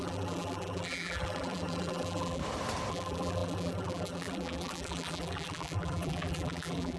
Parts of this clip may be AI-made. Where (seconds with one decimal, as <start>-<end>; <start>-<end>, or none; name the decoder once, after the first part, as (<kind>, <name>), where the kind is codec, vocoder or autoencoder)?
0.0-2.4 (vocoder, BigVGAN v2); 2.9-7.0